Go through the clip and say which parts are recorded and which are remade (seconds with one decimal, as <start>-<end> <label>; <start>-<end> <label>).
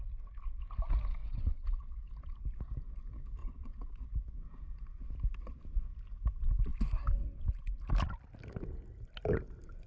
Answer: 0.0-1.2 recorded; 1.2-1.8 remade; 1.8-3.4 recorded; 3.4-4.0 remade; 4.0-9.9 recorded